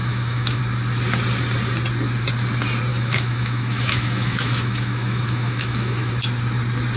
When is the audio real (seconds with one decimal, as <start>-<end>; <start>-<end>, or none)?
0.6-2.9; 6.1-7.0